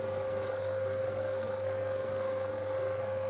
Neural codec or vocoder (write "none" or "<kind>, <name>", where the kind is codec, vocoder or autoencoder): codec, SNAC